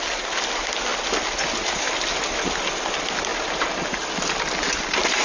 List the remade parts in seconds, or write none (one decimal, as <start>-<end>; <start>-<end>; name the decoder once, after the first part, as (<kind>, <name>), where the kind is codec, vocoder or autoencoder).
none